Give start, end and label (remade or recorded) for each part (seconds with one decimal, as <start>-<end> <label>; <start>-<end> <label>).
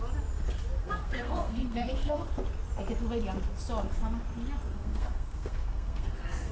0.0-0.8 recorded; 0.8-2.3 remade; 2.3-4.7 recorded; 4.7-6.5 remade